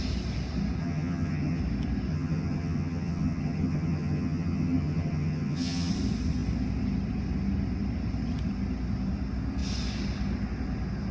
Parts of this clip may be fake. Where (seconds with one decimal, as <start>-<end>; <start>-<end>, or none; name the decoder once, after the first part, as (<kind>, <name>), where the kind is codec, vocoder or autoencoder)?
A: 0.8-1.6 (vocoder, HiFi-GAN); 2.1-5.9